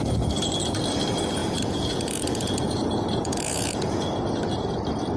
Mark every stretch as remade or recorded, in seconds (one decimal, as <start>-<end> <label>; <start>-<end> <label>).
0.0-1.4 recorded; 1.4-4.2 remade; 4.2-5.2 recorded